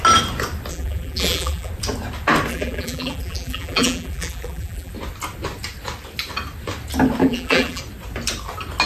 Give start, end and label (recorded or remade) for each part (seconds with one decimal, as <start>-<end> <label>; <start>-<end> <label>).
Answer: 0.0-0.7 recorded; 0.7-1.7 remade; 1.7-2.5 recorded; 2.5-4.9 remade; 4.9-7.2 recorded; 7.2-7.8 remade; 7.8-8.9 recorded